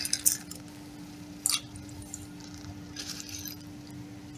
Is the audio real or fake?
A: real